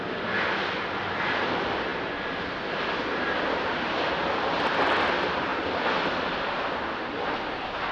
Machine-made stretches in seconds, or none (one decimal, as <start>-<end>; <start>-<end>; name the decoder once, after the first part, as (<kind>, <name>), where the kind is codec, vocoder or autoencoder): none